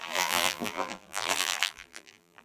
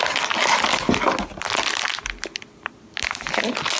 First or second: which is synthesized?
first